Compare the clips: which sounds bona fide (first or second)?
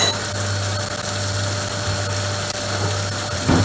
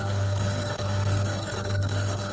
first